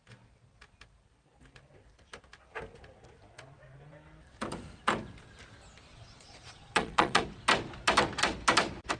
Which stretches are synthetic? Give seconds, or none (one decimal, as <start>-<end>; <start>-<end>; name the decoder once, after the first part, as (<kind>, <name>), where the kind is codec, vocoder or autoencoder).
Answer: 5.9-7.2 (vocoder, Vocos)